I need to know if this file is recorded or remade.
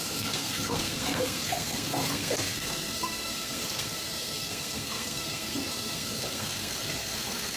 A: remade